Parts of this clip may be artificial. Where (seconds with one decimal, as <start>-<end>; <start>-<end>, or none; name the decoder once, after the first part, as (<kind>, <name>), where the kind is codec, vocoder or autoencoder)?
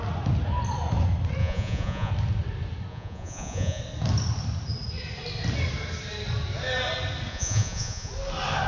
1.4-2.1 (vocoder, Vocos); 2.9-3.8; 7.3-8.1